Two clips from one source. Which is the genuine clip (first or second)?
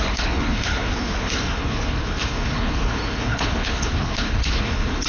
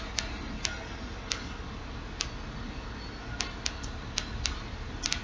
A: second